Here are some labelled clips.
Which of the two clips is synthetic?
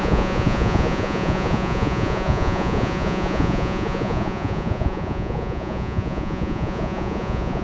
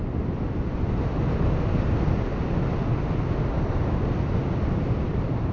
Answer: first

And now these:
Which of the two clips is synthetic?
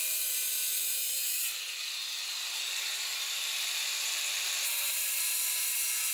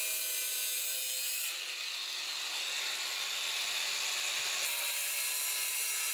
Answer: first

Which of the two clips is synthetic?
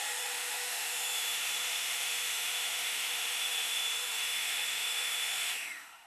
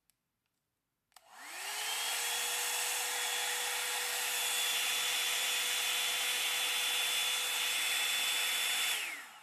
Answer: first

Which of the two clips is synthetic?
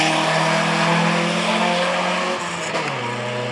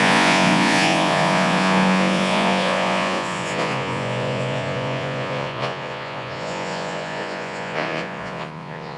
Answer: second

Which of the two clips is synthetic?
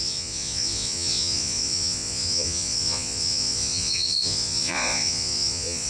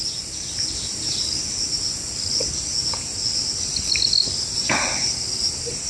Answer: first